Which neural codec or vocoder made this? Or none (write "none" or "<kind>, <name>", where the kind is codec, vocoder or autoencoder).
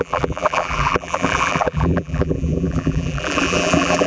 vocoder, BigVGAN v2